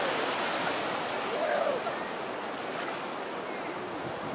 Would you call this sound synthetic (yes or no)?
no